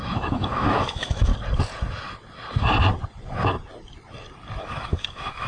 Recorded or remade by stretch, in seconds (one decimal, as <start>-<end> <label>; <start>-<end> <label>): 0.0-1.3 remade; 1.3-4.6 recorded; 4.6-5.5 remade

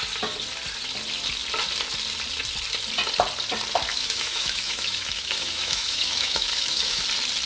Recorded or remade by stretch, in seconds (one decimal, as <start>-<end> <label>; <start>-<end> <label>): 0.0-3.9 recorded; 3.9-7.0 remade; 7.0-7.5 recorded

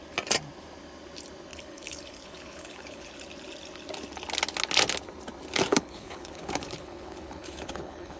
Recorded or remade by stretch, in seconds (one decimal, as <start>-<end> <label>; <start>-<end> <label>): 0.0-1.5 recorded; 1.5-3.1 remade; 3.1-5.7 recorded; 5.7-8.2 remade

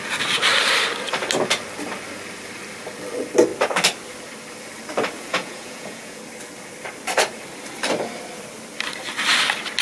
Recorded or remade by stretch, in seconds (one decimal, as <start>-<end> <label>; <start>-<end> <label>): 0.0-5.3 recorded; 5.3-6.2 remade; 6.2-9.8 recorded

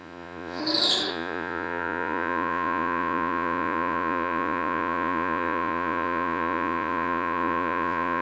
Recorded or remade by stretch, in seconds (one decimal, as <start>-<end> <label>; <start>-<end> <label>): 0.0-0.6 remade; 0.6-1.1 recorded; 1.1-8.2 remade

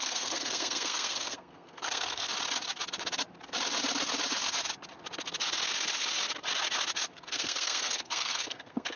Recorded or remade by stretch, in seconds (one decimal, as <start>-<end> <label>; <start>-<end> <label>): 0.0-2.3 remade; 2.3-7.2 recorded; 7.2-9.0 remade